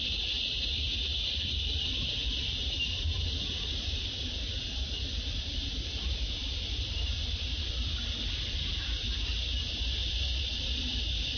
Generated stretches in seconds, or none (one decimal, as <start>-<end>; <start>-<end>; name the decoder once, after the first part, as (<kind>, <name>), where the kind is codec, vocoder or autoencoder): 0.0-0.9 (vocoder, BigVGAN v2); 1.6-11.4